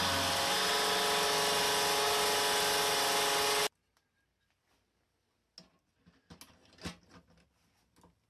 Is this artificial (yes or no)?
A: no